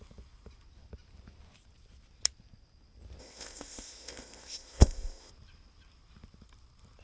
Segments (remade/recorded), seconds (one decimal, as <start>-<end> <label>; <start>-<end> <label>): 0.0-3.2 recorded; 3.2-5.3 remade; 5.3-7.0 recorded